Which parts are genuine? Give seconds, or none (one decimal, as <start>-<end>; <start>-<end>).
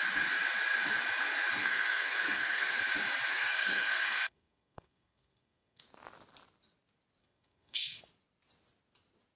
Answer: 0.0-1.6; 2.8-3.3; 5.8-7.2; 8.0-9.4